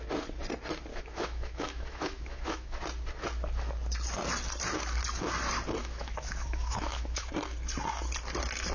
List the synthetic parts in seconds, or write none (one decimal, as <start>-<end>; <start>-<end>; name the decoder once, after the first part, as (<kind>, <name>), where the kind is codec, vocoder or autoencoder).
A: 0.9-2.8 (autoencoder, DAC-VAE); 5.8-7.3